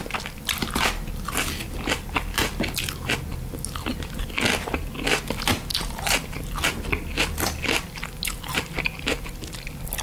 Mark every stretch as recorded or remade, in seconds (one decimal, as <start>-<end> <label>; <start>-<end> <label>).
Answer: 0.0-5.7 recorded; 5.7-6.4 remade; 6.4-10.0 recorded